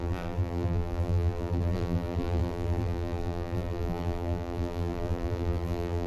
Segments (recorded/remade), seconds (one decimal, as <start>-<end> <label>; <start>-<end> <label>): 0.0-6.1 remade